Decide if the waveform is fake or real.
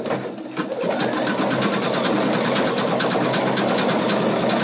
real